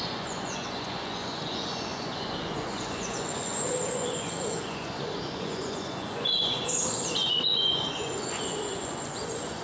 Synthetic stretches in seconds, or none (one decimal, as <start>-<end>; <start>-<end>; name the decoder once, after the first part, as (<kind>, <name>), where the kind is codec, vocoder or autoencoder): 0.0-9.6 (vocoder, Vocos)